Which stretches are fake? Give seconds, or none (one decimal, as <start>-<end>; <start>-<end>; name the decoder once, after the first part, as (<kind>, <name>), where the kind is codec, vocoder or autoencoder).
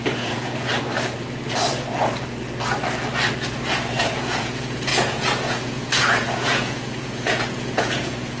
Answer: 0.0-0.7 (vocoder, Vocos); 4.0-8.4